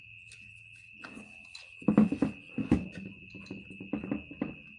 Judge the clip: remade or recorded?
recorded